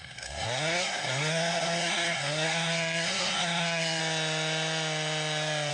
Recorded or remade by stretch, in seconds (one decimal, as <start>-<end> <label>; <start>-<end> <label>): 0.0-4.0 remade; 4.0-5.7 recorded